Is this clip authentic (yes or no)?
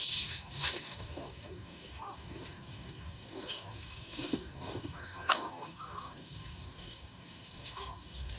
no